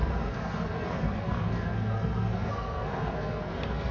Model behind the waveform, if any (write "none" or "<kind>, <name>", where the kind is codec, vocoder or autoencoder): codec, SNAC